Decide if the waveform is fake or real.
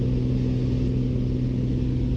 real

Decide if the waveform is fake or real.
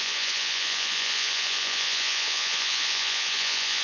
fake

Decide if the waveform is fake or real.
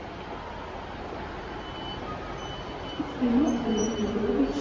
real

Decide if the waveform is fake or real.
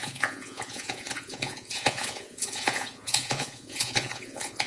fake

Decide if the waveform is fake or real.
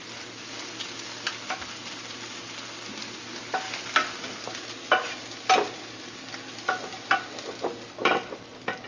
real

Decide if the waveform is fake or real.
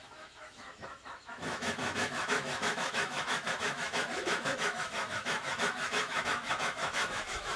fake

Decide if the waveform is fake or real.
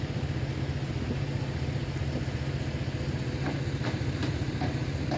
real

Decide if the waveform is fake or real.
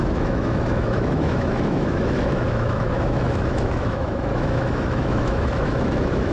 fake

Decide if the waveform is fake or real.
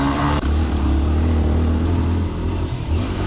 fake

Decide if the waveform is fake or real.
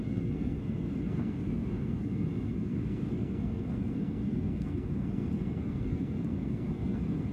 fake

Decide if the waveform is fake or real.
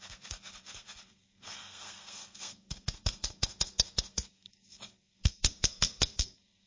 fake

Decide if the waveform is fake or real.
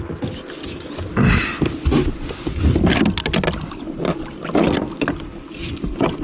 real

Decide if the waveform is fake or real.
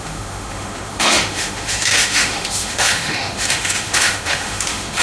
fake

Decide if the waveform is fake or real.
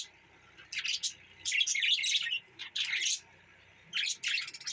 real